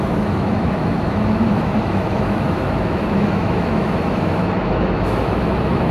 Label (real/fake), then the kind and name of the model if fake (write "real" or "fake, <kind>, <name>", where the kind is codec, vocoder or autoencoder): fake, autoencoder, DAC-VAE